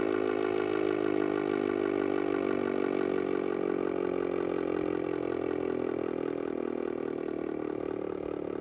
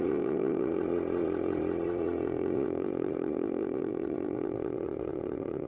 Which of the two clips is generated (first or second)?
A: second